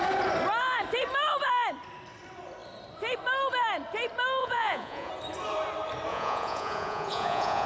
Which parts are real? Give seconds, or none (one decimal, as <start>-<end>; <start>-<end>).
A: 0.0-4.4; 5.1-6.1